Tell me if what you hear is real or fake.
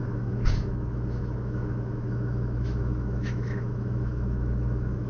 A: fake